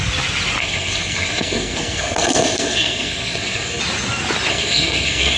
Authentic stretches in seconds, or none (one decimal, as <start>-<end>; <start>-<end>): 0.0-0.6; 3.8-4.5